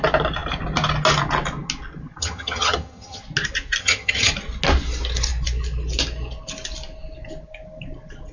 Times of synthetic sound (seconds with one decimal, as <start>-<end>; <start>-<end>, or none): 2.2-3.2; 3.8-4.3